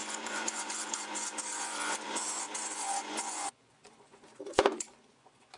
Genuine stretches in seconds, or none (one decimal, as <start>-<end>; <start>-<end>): none